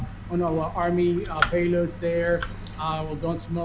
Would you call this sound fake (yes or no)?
no